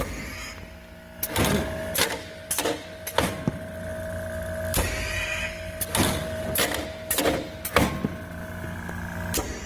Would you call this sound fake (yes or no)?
no